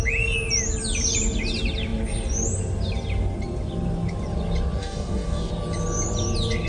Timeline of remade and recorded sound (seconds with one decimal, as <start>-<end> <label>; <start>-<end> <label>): 0.0-4.8 recorded; 4.8-5.5 remade; 5.5-6.7 recorded

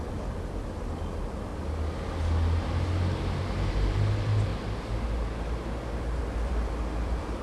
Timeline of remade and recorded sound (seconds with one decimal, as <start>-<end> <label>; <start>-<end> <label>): 0.0-1.5 remade; 1.5-3.7 recorded; 3.7-4.5 remade; 4.5-6.2 recorded; 6.2-7.4 remade